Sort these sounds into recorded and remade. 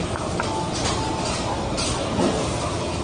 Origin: recorded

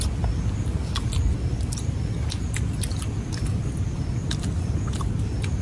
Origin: recorded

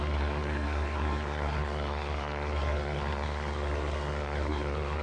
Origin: remade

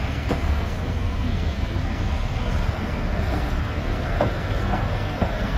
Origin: remade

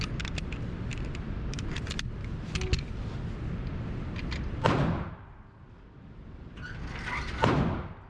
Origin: recorded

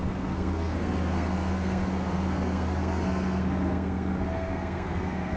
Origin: remade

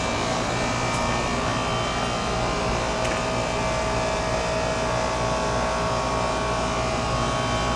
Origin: recorded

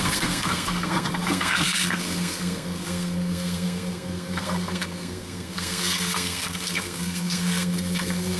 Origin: remade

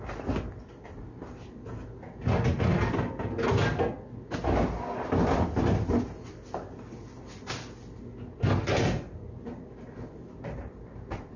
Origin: recorded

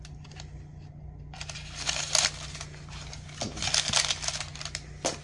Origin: recorded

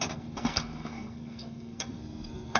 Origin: remade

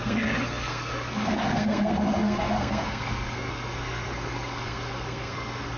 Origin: remade